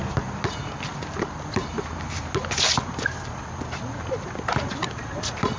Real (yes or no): yes